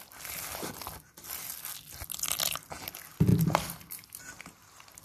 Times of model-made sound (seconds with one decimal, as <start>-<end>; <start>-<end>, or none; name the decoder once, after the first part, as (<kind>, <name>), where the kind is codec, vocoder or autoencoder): none